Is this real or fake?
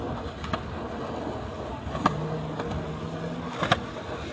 real